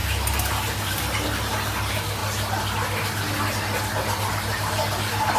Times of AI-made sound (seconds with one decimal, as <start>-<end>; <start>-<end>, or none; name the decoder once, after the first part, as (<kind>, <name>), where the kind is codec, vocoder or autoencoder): none